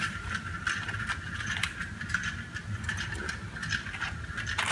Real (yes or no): yes